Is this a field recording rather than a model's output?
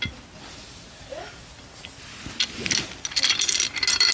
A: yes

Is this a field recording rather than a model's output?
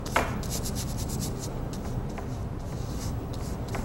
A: yes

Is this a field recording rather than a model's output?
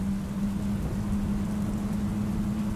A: yes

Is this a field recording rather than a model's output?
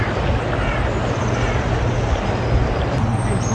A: yes